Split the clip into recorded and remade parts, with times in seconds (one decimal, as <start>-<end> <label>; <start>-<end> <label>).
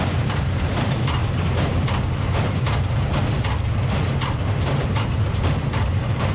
0.0-1.2 remade; 1.2-4.6 recorded; 4.6-6.3 remade